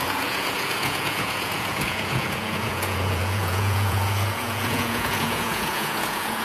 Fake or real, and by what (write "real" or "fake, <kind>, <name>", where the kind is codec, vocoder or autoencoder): fake, vocoder, Vocos